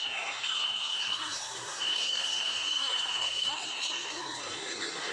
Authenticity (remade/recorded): remade